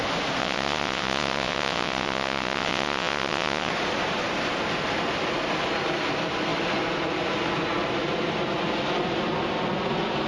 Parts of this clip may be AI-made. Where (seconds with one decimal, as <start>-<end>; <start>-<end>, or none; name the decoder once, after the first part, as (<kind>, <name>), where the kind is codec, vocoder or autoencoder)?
0.4-3.7 (vocoder, WaveNeXt)